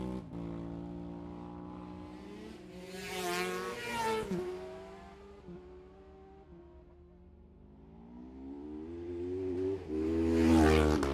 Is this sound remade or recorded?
recorded